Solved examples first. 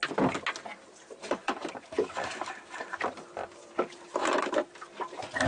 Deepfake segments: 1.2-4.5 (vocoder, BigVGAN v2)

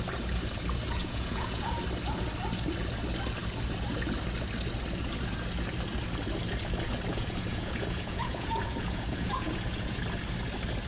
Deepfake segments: 1.0-1.8 (vocoder, Vocos); 7.1-10.0